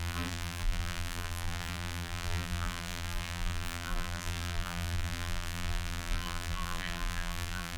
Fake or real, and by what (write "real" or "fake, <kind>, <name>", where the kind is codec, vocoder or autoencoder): fake, vocoder, BigVGAN v2